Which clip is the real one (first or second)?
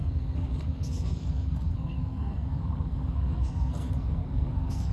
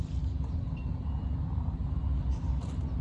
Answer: second